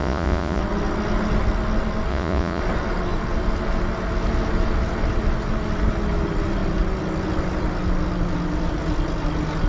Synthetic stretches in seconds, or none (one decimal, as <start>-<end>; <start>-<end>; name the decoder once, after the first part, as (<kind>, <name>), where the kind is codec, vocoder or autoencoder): 0.0-0.6 (vocoder, Vocos); 2.1-2.6